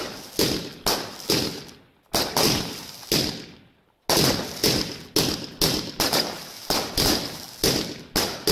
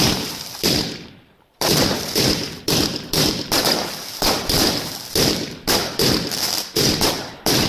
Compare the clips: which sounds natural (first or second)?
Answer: first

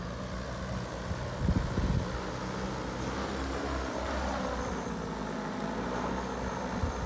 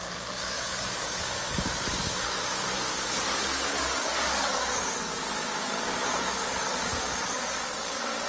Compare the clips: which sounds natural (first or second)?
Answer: first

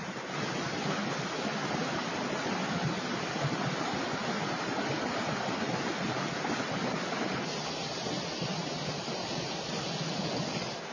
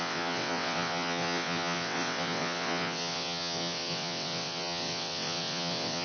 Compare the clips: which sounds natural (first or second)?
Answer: first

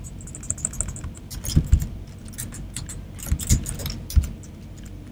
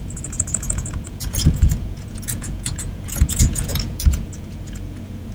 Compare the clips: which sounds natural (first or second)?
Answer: first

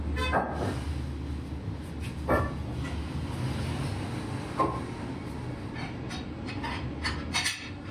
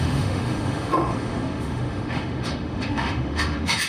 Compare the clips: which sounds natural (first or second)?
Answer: first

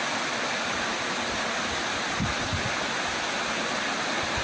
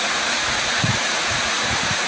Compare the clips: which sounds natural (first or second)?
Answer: first